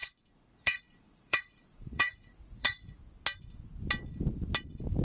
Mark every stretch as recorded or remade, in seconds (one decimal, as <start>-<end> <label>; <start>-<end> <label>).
0.0-3.0 remade; 3.0-5.0 recorded

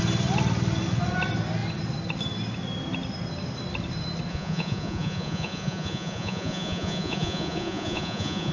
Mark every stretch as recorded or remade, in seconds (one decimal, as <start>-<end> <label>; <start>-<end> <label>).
0.0-4.3 recorded; 4.3-8.5 remade

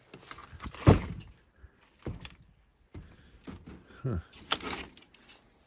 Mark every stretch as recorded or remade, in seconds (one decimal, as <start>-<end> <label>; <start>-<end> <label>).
0.0-5.7 recorded

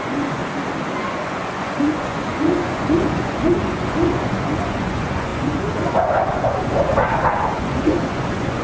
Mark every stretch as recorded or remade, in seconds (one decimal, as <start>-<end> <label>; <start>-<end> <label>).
0.0-0.4 remade; 0.4-0.9 recorded; 0.9-8.6 remade

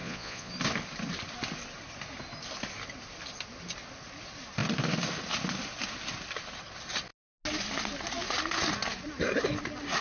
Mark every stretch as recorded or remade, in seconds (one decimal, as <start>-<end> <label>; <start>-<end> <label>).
0.0-0.5 remade; 0.5-10.0 recorded

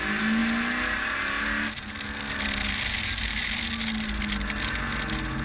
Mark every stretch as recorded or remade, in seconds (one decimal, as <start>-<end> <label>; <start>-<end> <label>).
0.0-5.4 recorded